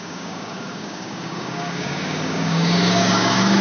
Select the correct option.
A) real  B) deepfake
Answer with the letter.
B